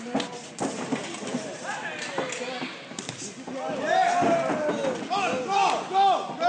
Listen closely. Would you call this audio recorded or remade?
recorded